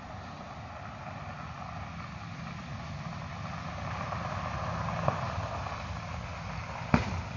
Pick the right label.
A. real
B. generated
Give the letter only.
A